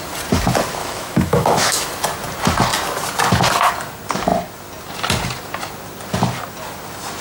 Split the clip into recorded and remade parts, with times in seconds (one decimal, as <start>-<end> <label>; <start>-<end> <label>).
0.0-0.8 recorded; 0.8-1.9 remade; 1.9-7.2 recorded

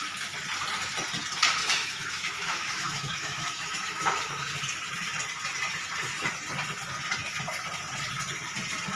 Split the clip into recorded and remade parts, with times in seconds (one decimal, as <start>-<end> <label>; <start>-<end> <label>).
0.0-1.6 recorded; 1.6-4.2 remade; 4.2-9.0 recorded

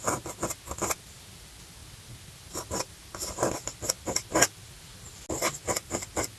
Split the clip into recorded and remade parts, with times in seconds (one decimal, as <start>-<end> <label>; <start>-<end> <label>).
0.0-6.4 recorded

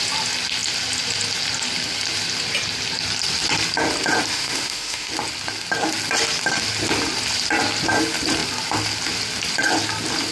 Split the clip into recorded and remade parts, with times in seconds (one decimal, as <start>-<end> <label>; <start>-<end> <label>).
0.0-4.3 recorded; 4.3-5.1 remade; 5.1-10.3 recorded